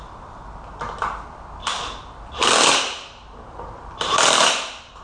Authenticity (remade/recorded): recorded